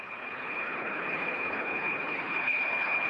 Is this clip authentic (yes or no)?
no